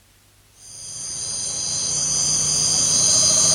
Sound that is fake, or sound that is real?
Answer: real